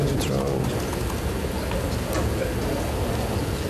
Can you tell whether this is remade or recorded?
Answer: recorded